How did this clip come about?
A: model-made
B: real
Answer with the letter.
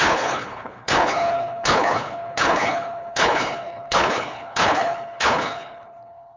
A